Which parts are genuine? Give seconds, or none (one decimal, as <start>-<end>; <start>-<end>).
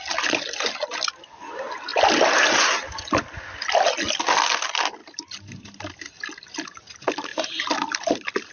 0.0-8.5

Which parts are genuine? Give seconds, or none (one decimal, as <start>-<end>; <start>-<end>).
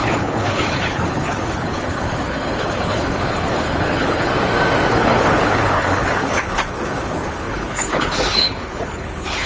4.3-4.9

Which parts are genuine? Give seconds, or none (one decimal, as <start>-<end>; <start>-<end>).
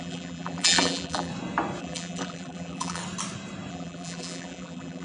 1.3-1.8; 3.0-3.7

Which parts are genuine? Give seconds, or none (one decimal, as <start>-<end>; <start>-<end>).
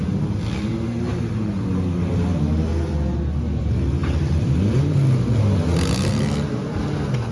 0.0-7.3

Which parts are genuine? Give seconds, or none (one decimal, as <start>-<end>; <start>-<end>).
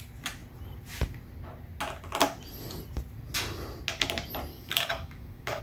0.0-4.5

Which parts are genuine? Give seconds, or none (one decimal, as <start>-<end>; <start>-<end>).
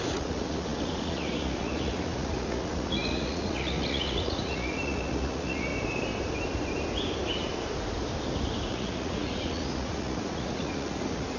5.7-8.7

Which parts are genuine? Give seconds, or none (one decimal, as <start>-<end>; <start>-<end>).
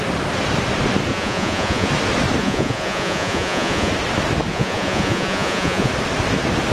0.0-1.1; 1.9-2.4; 3.9-4.5; 5.9-6.7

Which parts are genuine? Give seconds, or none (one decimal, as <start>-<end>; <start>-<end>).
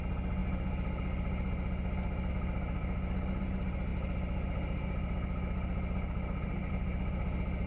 0.0-7.7